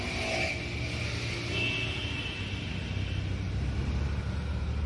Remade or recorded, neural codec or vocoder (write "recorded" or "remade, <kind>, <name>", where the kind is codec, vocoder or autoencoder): recorded